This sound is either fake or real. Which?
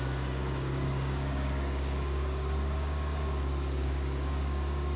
fake